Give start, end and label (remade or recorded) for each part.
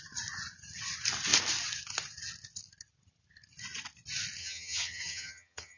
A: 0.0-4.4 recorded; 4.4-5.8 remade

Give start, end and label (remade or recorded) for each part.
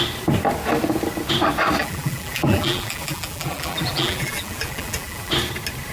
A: 0.0-1.8 recorded; 1.8-5.3 remade; 5.3-5.9 recorded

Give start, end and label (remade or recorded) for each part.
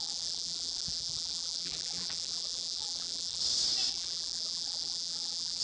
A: 0.0-3.4 remade; 3.4-3.9 recorded; 3.9-5.6 remade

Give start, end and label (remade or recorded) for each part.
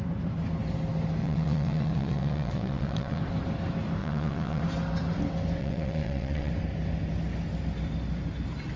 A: 0.0-1.2 recorded; 1.2-3.2 remade; 3.2-4.0 recorded; 4.0-4.6 remade; 4.6-5.6 recorded; 5.6-6.5 remade; 6.5-8.8 recorded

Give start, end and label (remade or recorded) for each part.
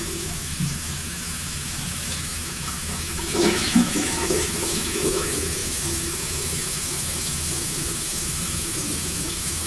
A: 0.0-9.7 remade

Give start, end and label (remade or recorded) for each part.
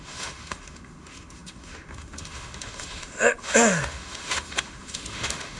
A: 0.0-5.6 remade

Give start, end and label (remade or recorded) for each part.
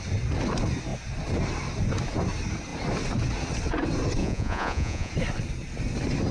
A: 0.0-4.2 recorded; 4.2-5.1 remade; 5.1-6.3 recorded